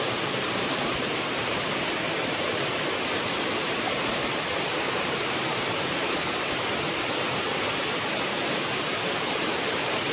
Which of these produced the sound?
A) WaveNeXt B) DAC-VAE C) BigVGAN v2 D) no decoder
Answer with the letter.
C